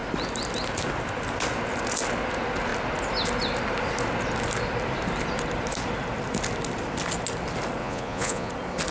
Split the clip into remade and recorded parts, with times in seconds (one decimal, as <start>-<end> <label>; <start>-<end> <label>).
0.0-7.8 recorded; 7.8-8.5 remade; 8.5-8.9 recorded